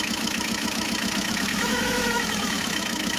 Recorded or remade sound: remade